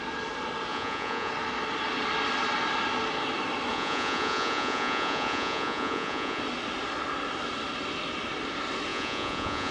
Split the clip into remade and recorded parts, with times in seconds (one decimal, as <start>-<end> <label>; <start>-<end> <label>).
0.0-0.7 recorded; 0.7-1.3 remade; 1.3-3.7 recorded; 3.7-6.4 remade; 6.4-8.9 recorded; 8.9-9.7 remade